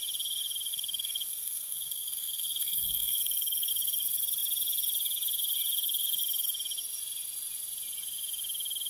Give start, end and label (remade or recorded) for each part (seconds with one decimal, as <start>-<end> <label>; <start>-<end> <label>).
0.0-0.7 recorded; 0.7-3.7 remade; 3.7-8.9 recorded